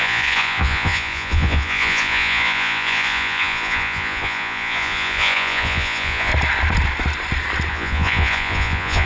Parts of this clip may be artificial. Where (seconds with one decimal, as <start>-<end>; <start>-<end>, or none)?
0.0-6.3; 7.7-9.1